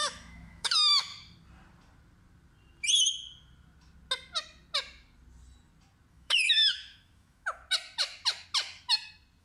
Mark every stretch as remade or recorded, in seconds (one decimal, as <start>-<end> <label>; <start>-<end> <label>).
0.0-1.1 remade; 1.1-6.1 recorded; 6.1-7.6 remade; 7.6-9.4 recorded